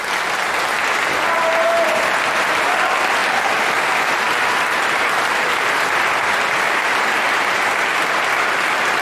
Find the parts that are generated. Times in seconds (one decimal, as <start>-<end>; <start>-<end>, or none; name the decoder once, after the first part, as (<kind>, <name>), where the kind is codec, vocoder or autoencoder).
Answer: none